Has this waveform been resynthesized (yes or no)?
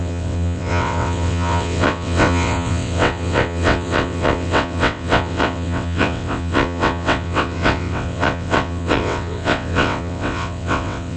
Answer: yes